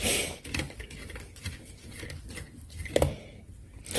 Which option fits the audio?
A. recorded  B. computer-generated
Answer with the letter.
A